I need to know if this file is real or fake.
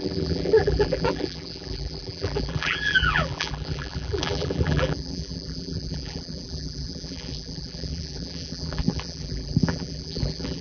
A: fake